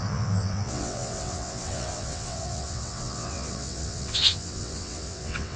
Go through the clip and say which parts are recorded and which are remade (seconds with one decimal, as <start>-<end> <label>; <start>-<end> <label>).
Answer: 0.0-5.6 remade